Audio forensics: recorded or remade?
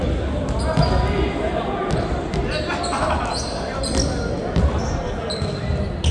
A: recorded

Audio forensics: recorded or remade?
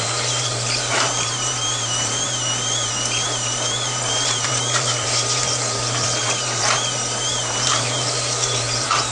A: remade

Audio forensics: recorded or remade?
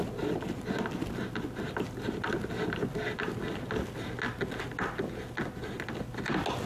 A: recorded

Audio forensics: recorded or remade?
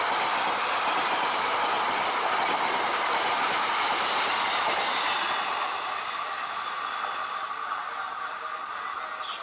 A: recorded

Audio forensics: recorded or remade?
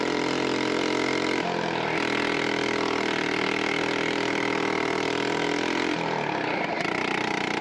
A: recorded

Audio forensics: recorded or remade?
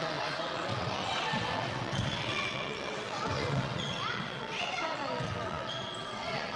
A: remade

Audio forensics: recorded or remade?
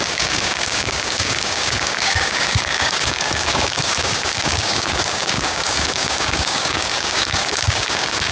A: remade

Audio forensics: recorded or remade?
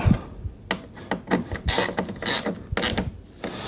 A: recorded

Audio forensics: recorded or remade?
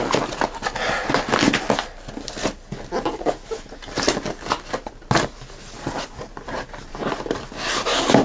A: recorded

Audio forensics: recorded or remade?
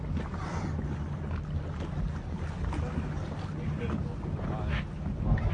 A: recorded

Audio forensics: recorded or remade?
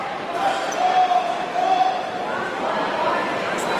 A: recorded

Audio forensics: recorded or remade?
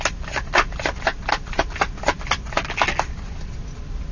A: recorded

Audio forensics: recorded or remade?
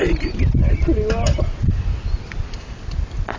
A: recorded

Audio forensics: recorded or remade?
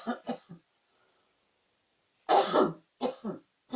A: recorded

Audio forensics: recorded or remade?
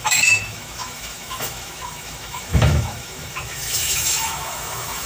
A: remade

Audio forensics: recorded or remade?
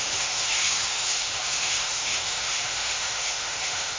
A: remade